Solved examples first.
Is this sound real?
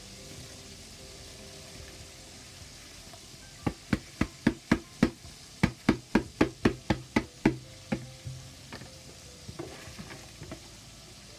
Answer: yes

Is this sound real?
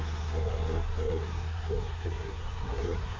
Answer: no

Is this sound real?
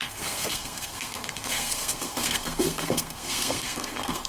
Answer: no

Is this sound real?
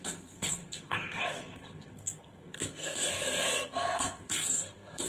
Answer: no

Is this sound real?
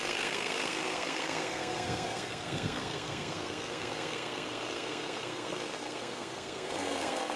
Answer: no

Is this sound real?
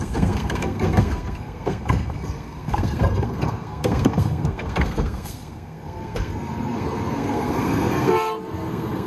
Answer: no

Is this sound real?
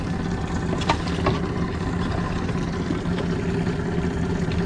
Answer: yes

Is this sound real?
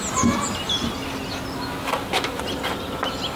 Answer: yes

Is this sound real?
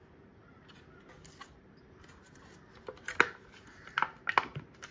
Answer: yes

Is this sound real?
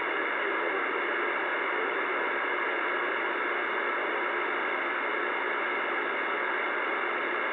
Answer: yes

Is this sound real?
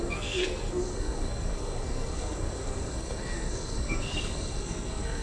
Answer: no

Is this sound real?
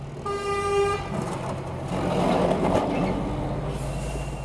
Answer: yes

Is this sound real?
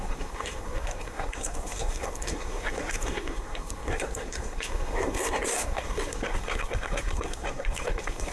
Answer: no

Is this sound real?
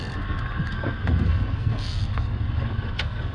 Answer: no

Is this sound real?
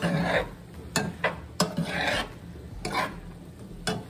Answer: yes